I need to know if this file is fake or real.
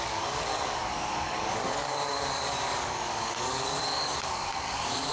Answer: fake